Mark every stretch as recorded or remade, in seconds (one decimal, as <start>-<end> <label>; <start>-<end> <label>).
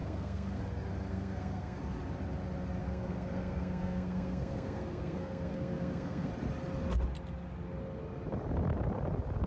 0.0-0.6 remade; 0.6-1.1 recorded; 1.1-1.8 remade; 1.8-2.8 recorded; 2.8-6.3 remade; 6.3-9.5 recorded